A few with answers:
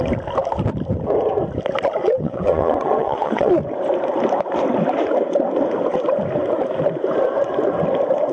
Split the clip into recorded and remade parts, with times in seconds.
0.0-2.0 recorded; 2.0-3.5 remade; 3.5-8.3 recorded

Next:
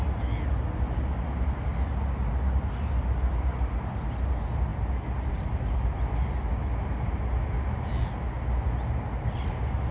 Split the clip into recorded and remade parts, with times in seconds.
0.0-9.9 recorded

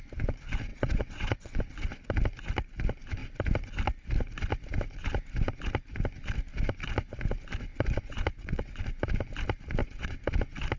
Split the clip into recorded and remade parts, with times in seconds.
0.0-0.7 recorded; 0.7-1.6 remade; 1.6-7.7 recorded; 7.7-8.8 remade; 8.8-9.8 recorded; 9.8-10.4 remade; 10.4-10.8 recorded

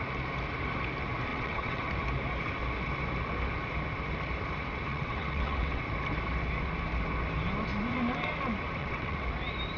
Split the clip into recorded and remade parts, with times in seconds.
0.0-1.3 recorded; 1.3-1.9 remade; 1.9-4.9 recorded; 4.9-5.8 remade; 5.8-8.8 recorded; 8.8-9.3 remade; 9.3-9.8 recorded

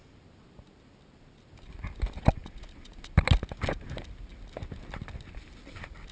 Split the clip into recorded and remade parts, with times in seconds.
0.0-6.1 recorded

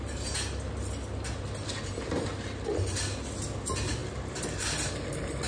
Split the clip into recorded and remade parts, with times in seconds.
0.0-5.5 recorded

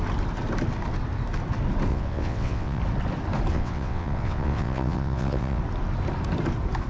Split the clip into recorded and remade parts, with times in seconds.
0.0-1.9 recorded; 1.9-2.8 remade; 2.8-3.5 recorded; 3.5-5.6 remade; 5.6-6.9 recorded